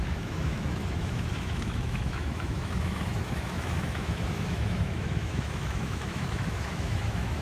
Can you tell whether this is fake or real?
fake